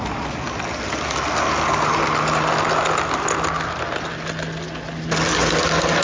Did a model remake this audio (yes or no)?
no